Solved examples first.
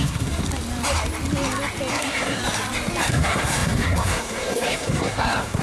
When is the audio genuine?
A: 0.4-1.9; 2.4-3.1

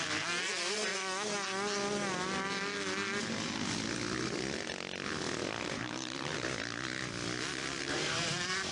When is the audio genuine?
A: 0.9-5.6; 7.0-7.8

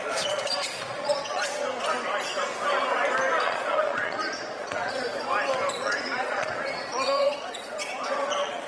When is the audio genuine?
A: 1.6-3.4; 5.1-5.7